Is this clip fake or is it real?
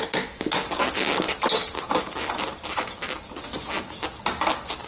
real